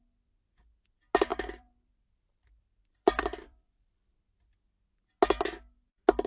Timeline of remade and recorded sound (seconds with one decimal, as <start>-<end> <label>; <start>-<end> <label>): 0.0-1.3 recorded; 1.3-4.2 remade; 4.2-6.3 recorded